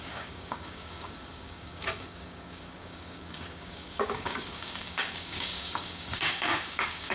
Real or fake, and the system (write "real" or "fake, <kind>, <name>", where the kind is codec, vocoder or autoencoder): fake, codec, DAC